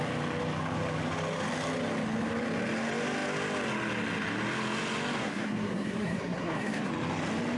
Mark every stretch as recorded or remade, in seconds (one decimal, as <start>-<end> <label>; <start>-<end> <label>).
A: 0.0-5.2 recorded; 5.2-6.9 remade; 6.9-7.6 recorded